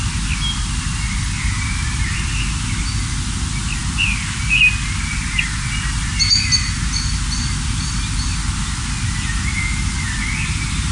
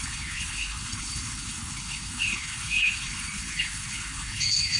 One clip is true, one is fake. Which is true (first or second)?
first